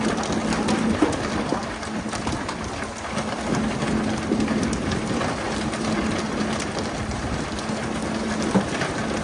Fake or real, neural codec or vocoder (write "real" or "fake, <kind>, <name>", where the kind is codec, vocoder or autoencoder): real